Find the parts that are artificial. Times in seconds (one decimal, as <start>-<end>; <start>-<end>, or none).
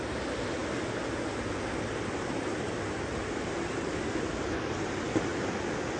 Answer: none